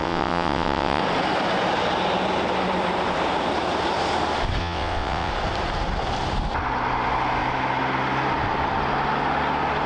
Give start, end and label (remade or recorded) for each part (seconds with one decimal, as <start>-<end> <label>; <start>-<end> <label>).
0.0-1.0 remade; 1.0-4.6 recorded; 4.6-5.3 remade; 5.3-9.9 recorded